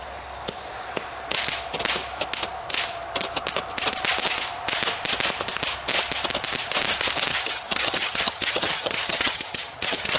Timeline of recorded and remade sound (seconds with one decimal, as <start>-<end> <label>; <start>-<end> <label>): 0.0-7.3 recorded; 7.3-10.2 remade